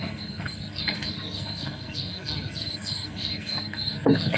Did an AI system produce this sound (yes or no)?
yes